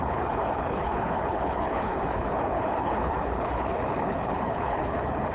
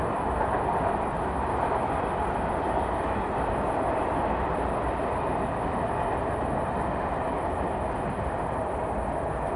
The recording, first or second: second